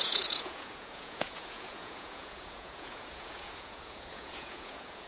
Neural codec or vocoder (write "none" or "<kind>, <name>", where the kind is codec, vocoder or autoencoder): vocoder, Vocos